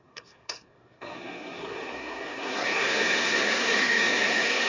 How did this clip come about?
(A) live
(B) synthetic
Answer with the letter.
B